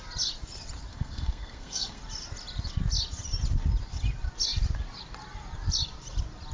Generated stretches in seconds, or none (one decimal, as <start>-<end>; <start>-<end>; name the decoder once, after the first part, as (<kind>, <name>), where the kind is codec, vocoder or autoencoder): 0.9-2.0 (codec, SNAC)